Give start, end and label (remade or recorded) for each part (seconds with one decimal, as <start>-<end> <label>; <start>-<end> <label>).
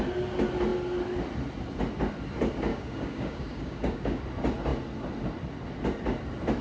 0.0-2.7 recorded; 2.7-4.2 remade; 4.2-6.6 recorded